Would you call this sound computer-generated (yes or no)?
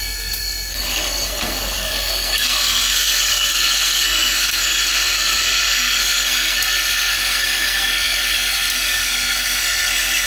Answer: yes